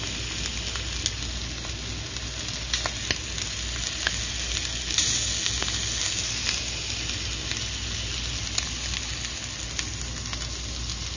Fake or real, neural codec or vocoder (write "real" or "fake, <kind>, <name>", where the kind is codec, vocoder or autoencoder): real